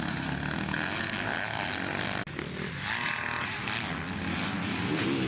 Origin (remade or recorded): recorded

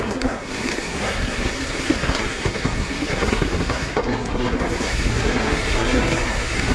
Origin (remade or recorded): remade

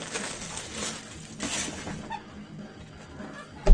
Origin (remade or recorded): recorded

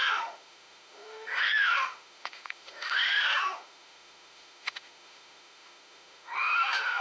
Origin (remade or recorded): remade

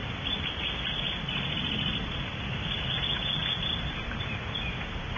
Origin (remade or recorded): recorded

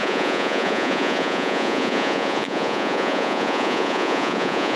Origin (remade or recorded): remade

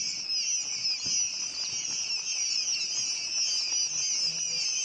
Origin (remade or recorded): recorded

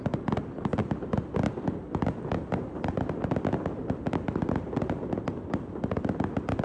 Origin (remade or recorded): recorded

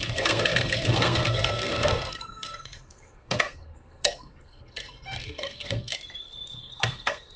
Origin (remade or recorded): remade